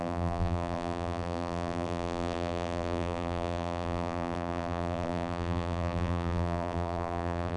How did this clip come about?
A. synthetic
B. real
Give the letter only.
A